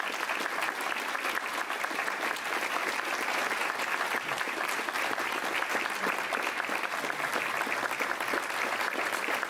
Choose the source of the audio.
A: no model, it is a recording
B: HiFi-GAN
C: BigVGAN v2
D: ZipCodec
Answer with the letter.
A